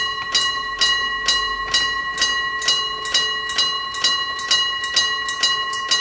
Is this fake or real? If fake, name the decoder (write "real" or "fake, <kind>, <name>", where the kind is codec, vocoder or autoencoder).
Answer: real